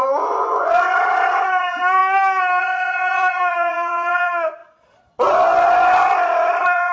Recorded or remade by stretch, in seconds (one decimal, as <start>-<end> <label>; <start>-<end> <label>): 0.0-2.0 remade; 2.0-2.6 recorded; 2.6-4.6 remade; 4.6-6.5 recorded; 6.5-6.9 remade